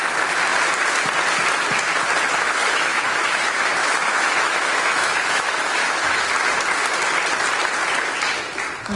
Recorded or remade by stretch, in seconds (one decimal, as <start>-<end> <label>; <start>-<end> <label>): 0.0-2.6 recorded; 2.6-6.2 remade; 6.2-9.0 recorded